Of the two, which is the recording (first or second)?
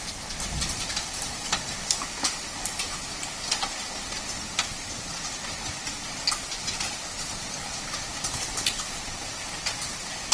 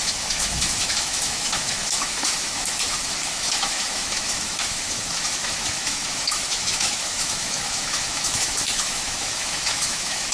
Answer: first